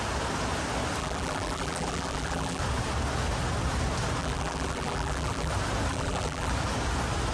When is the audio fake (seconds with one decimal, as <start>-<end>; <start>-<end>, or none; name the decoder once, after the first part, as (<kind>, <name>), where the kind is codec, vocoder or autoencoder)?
1.0-2.6 (vocoder, BigVGAN v2); 4.2-5.5; 5.9-6.5